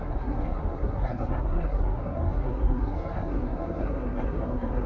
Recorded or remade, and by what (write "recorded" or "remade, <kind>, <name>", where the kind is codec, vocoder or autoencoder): remade, codec, SNAC